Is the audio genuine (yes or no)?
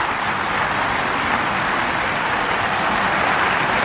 yes